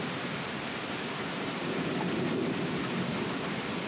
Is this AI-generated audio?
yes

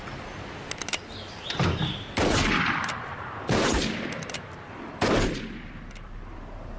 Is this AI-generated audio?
no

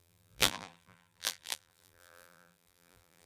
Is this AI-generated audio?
yes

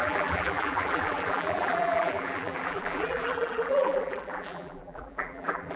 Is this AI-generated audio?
yes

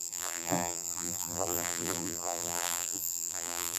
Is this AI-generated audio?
yes